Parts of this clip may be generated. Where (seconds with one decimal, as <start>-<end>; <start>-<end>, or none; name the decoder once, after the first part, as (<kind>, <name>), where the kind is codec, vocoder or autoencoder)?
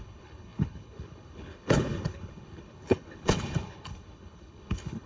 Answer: 0.0-5.1 (codec, HILCodec)